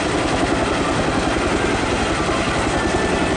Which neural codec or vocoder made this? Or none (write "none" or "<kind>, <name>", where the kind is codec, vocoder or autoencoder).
none